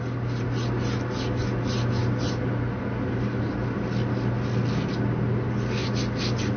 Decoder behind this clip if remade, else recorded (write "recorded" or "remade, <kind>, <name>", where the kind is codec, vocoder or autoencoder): recorded